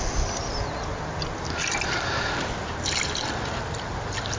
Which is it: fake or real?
real